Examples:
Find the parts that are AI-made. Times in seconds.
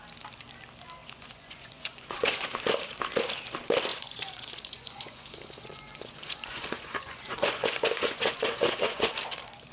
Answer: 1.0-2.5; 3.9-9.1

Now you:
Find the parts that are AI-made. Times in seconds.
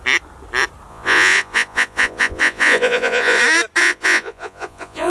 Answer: 0.9-3.4; 3.8-5.1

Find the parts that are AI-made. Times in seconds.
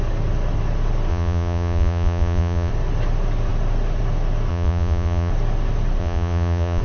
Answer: 1.1-2.7; 4.5-5.3; 6.0-6.8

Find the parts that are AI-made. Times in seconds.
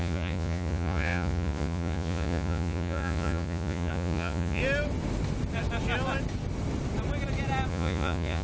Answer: 0.0-4.6; 7.7-8.4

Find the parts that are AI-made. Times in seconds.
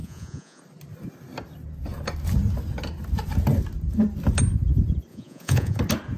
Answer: 0.0-0.6; 5.1-5.8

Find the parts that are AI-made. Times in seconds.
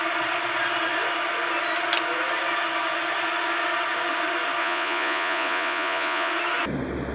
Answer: 4.6-6.3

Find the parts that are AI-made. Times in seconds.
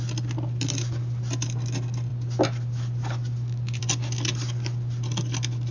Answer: none